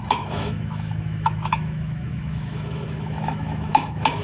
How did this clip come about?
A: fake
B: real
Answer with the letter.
A